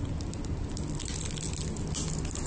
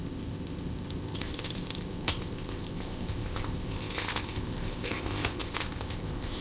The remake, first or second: second